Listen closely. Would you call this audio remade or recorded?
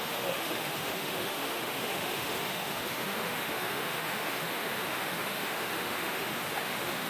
remade